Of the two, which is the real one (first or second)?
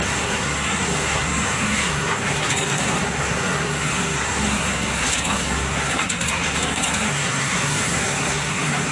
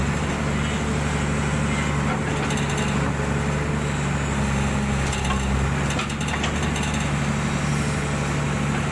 second